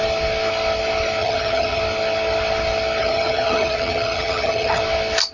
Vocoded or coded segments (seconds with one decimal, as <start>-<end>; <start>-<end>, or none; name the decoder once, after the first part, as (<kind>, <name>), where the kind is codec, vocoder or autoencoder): 1.2-1.8 (vocoder, HiFi-GAN); 3.0-4.8